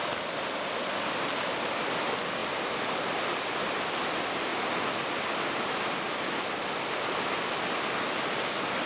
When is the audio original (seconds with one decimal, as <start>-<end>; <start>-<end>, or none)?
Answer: 0.0-8.9